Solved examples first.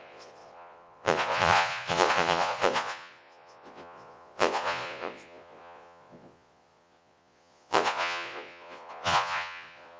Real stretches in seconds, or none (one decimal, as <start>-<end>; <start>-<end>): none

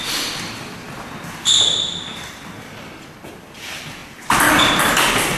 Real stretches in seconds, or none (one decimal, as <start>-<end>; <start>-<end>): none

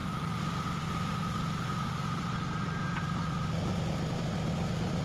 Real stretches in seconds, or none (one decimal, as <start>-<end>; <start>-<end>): 0.0-5.0

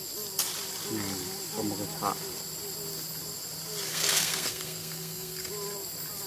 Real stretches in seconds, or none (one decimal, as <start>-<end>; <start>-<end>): 0.0-3.9; 5.5-6.3

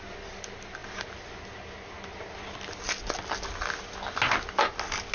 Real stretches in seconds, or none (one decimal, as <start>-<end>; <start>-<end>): 0.0-5.1

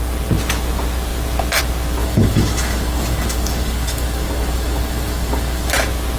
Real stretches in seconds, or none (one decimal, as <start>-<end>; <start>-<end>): 0.0-2.0; 5.7-6.2

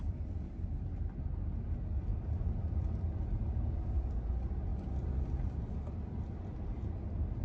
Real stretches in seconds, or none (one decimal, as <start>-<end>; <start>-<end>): 0.0-2.1; 4.3-7.4